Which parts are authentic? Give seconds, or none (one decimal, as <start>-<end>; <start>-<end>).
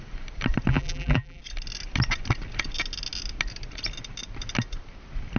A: 0.0-0.7; 1.4-5.4